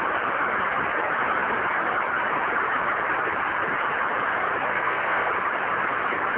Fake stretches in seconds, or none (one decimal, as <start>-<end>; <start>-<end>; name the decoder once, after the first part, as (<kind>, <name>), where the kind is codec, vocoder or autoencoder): 4.7-5.3 (codec, SNAC)